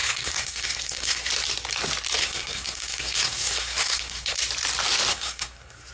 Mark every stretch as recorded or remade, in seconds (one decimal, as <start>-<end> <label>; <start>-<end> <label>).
0.0-1.3 remade; 1.3-2.2 recorded; 2.2-4.4 remade; 4.4-5.1 recorded; 5.1-5.9 remade